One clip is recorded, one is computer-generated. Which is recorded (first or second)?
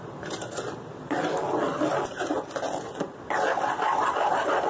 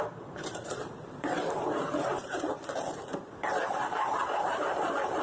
first